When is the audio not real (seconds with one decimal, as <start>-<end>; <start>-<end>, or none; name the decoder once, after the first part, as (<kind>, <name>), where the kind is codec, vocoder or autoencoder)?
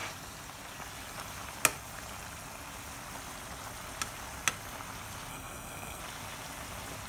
5.3-6.0 (codec, SNAC)